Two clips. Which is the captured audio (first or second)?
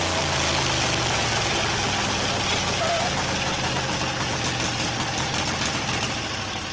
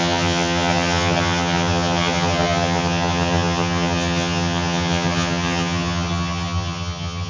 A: first